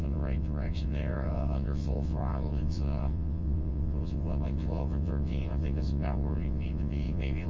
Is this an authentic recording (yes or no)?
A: no